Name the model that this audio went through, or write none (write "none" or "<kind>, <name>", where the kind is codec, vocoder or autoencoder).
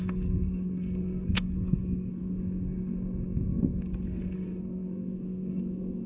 codec, SNAC